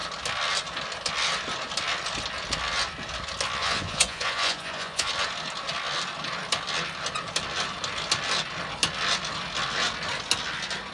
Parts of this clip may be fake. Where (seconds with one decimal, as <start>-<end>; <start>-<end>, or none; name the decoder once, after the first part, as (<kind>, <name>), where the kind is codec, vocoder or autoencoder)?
3.6-5.1 (vocoder, Vocos)